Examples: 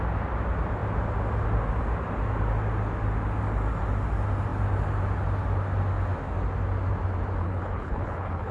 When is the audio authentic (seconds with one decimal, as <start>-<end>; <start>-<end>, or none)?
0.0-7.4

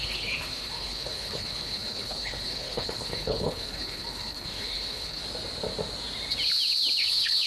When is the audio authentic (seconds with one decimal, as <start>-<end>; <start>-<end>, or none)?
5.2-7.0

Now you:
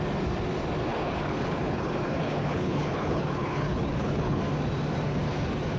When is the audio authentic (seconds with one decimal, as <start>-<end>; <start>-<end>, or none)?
0.0-0.9; 4.4-5.8

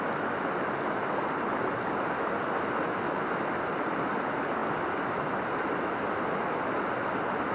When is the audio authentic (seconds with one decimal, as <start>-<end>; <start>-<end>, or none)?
0.0-7.5

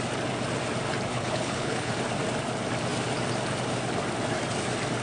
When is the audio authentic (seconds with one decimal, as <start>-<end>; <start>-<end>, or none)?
0.0-1.1; 1.9-5.0

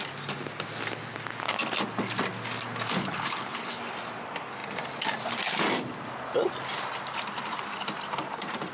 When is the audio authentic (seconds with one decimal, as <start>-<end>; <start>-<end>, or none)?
0.0-3.0; 3.8-8.7

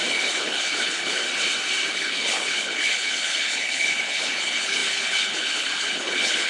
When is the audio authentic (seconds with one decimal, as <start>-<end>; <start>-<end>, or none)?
1.2-1.9